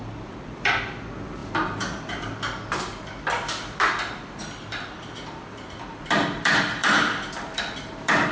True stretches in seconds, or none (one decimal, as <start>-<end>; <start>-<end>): none